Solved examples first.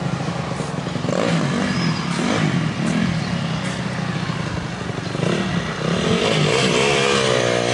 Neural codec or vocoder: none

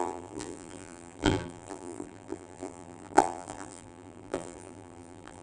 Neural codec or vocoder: vocoder, BigVGAN v2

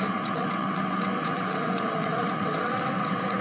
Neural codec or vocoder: vocoder, WaveNeXt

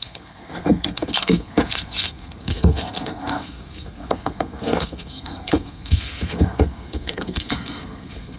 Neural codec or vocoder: codec, SNAC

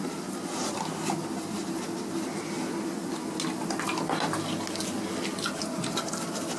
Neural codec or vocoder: none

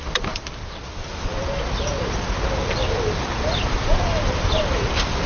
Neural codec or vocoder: none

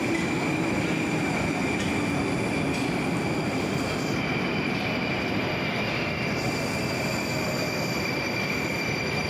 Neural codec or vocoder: vocoder, BigVGAN v2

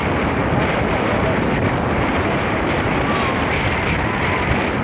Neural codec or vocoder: none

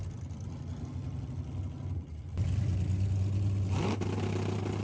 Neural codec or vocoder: none